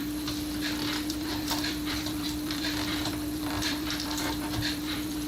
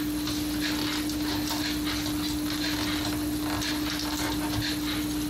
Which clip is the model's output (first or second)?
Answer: first